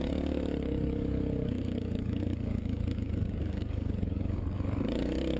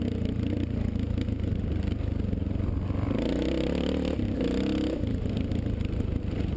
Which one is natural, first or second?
second